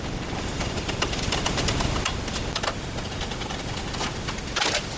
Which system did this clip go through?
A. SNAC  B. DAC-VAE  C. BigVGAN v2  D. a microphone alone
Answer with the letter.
D